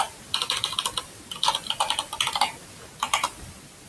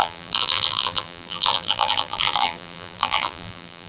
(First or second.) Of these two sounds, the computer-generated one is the second